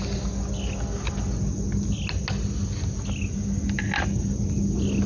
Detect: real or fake real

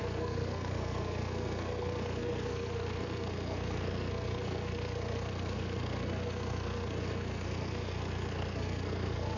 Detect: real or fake fake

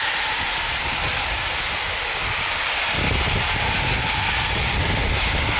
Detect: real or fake real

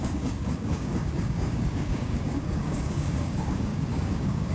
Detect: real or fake fake